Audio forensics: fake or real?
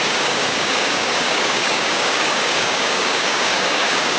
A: fake